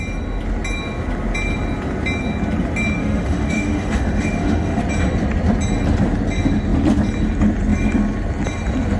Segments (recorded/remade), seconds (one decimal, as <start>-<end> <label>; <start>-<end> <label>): 0.0-3.0 recorded; 3.0-4.8 remade; 4.8-9.0 recorded